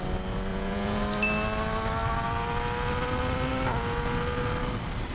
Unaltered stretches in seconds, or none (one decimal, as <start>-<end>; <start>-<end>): 0.0-0.5; 1.0-5.1